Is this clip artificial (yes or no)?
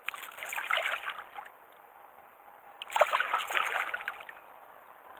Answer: no